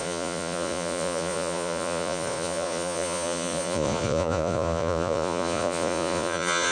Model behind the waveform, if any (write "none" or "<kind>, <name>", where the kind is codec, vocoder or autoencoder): vocoder, Vocos